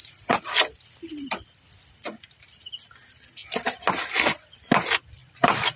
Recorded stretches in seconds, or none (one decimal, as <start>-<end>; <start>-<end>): 1.9-5.2